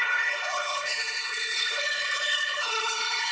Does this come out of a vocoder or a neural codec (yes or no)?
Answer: yes